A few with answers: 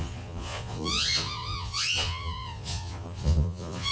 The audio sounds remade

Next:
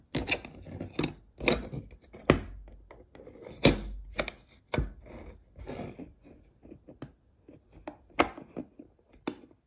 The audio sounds recorded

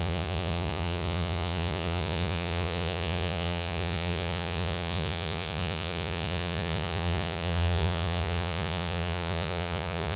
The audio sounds remade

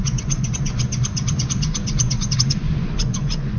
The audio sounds remade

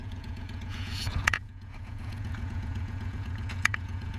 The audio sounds remade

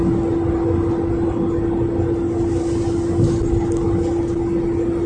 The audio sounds recorded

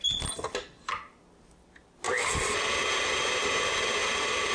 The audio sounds recorded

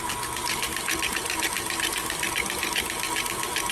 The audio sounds recorded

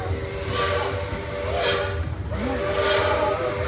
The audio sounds recorded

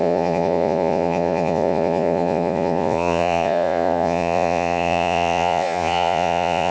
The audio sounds remade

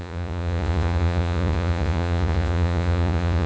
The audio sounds remade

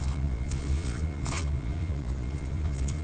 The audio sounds remade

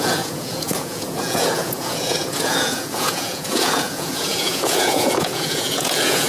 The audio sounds remade